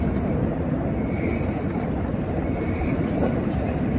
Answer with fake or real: fake